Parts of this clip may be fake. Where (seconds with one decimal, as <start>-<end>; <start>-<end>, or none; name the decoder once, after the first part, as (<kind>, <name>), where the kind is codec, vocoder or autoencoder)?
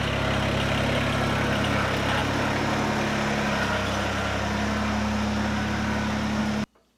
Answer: none